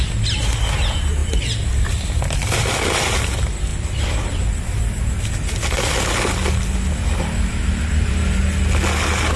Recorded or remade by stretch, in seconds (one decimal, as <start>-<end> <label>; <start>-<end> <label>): 0.0-1.2 recorded; 1.2-2.2 remade; 2.2-3.7 recorded; 3.7-5.3 remade; 5.3-7.5 recorded; 7.5-8.1 remade; 8.1-9.4 recorded